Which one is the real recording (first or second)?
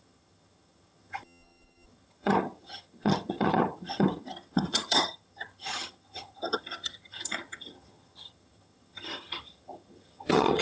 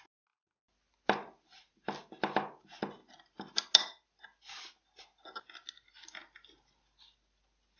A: second